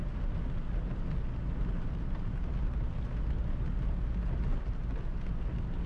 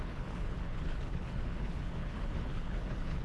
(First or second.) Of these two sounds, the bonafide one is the first